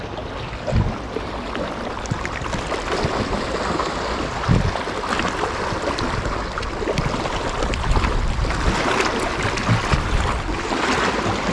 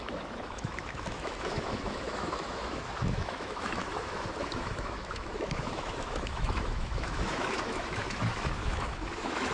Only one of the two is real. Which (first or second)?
first